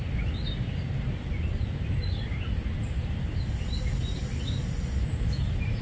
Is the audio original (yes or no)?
yes